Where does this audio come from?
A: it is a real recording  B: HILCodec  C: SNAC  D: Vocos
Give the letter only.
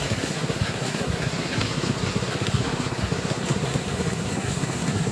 C